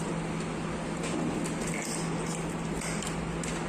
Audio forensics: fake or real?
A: real